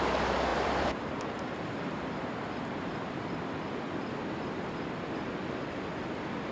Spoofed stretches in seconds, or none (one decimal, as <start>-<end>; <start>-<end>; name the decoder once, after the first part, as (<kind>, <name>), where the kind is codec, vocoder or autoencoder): 0.5-1.2 (vocoder, BigVGAN v2); 2.9-3.7